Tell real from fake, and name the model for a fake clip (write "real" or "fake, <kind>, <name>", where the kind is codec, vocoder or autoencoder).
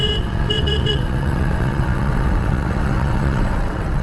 fake, vocoder, WaveNeXt